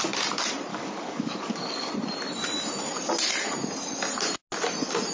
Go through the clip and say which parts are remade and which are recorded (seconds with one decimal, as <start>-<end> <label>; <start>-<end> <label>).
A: 0.0-0.7 recorded; 0.7-1.9 remade; 1.9-5.1 recorded